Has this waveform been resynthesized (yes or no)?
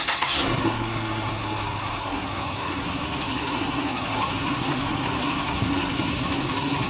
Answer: yes